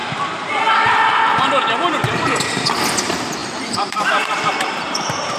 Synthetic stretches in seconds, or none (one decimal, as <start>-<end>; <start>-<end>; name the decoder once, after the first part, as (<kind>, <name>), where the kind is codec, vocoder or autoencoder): 3.4-5.4 (vocoder, BigVGAN v2)